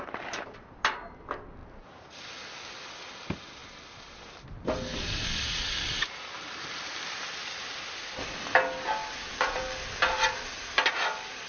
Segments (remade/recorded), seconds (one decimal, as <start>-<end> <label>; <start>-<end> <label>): 0.0-11.5 recorded